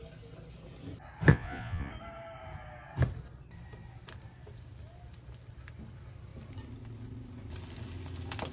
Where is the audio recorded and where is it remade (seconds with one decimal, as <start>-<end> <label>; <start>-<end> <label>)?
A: 0.0-1.3 recorded; 1.3-1.9 remade; 1.9-8.5 recorded